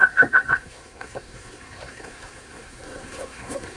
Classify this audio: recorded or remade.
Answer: remade